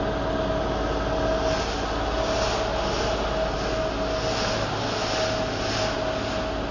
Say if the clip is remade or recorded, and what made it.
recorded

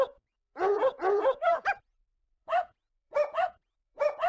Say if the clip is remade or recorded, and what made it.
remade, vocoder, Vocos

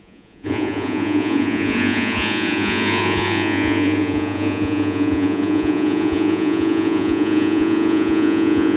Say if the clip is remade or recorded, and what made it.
remade, vocoder, Vocos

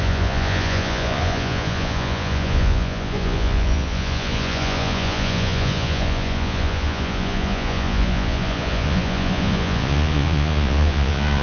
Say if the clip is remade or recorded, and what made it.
remade, vocoder, Vocos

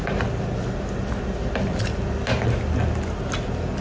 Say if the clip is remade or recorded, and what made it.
recorded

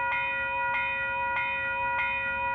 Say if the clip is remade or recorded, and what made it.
recorded